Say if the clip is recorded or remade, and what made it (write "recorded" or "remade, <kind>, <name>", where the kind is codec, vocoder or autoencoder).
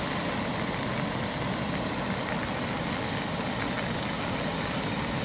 recorded